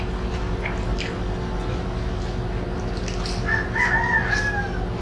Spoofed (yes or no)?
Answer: no